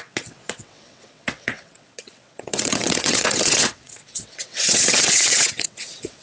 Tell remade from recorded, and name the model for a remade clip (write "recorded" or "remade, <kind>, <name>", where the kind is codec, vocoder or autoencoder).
remade, vocoder, WaveNeXt